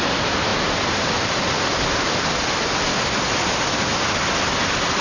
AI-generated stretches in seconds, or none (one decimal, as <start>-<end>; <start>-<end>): none